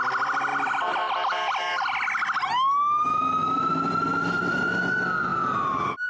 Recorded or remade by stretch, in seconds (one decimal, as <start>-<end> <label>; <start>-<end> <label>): 0.0-3.4 recorded; 3.4-4.6 remade; 4.6-5.3 recorded; 5.3-6.1 remade